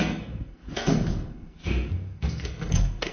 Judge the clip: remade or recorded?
remade